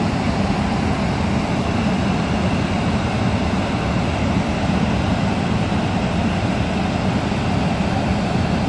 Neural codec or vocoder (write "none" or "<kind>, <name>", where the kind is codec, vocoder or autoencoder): none